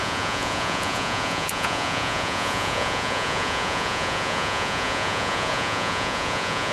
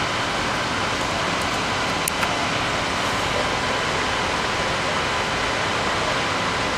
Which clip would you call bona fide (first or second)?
second